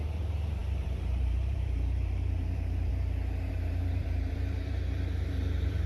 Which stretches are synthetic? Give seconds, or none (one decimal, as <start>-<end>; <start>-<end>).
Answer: 0.0-2.9; 3.5-5.9